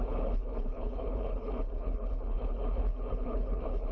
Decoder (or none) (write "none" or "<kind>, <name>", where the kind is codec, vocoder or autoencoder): codec, HILCodec